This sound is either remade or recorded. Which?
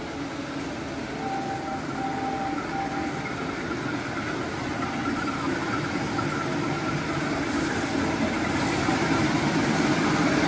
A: recorded